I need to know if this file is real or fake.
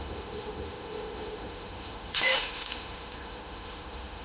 fake